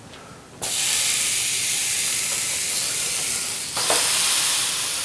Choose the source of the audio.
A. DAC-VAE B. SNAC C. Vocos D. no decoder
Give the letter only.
D